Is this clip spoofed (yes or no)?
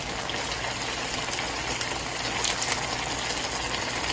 no